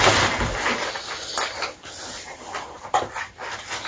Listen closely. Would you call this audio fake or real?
real